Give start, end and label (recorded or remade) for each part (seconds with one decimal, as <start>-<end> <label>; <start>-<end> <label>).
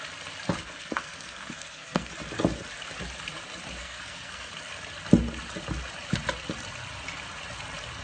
0.0-0.6 recorded; 0.6-2.1 remade; 2.1-3.8 recorded; 3.8-4.5 remade; 4.5-8.0 recorded